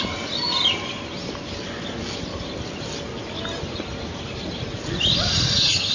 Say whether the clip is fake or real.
real